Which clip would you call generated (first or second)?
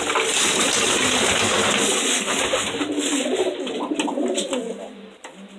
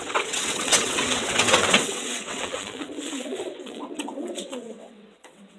second